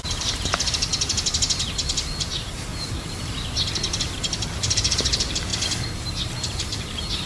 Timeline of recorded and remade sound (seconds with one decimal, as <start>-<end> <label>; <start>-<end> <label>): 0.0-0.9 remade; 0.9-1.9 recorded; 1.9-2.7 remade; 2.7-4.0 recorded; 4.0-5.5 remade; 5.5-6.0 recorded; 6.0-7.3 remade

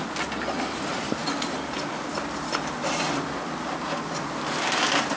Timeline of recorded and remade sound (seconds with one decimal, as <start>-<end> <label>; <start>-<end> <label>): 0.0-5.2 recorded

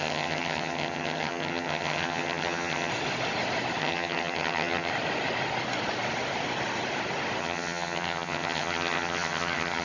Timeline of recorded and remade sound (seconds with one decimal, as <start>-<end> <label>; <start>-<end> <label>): 0.0-2.9 remade; 2.9-3.8 recorded; 3.8-4.9 remade; 4.9-7.4 recorded; 7.4-9.8 remade

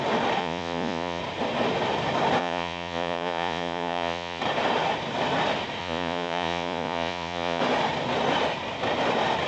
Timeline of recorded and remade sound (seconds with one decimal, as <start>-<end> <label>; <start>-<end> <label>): 0.0-0.4 recorded; 0.4-1.2 remade; 1.2-2.4 recorded; 2.4-4.4 remade; 4.4-5.8 recorded; 5.8-7.6 remade; 7.6-9.5 recorded

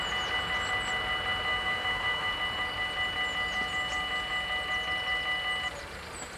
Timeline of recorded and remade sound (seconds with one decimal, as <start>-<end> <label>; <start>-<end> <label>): 0.0-1.5 recorded; 1.5-2.3 remade; 2.3-6.4 recorded